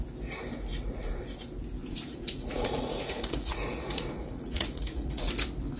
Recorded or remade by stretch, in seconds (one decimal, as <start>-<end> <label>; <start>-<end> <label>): 0.0-0.7 recorded; 0.7-1.2 remade; 1.2-1.8 recorded; 1.8-5.3 remade; 5.3-5.8 recorded